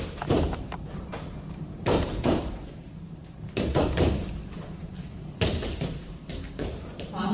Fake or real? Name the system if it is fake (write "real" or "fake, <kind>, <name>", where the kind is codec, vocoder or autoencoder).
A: fake, vocoder, BigVGAN v2